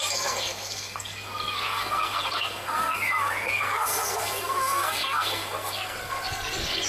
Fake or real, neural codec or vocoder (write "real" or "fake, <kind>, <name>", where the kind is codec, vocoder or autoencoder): fake, codec, SNAC